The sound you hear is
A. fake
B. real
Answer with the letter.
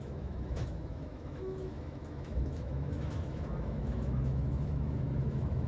A